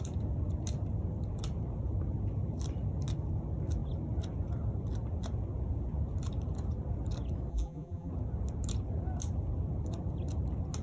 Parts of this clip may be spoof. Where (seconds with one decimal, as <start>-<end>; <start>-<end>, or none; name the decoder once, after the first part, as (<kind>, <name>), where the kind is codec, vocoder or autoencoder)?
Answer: 7.5-8.1 (vocoder, BigVGAN v2)